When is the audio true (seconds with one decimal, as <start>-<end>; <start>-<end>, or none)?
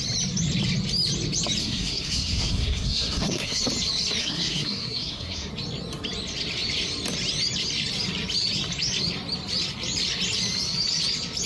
0.0-1.6; 3.6-4.2; 5.5-11.5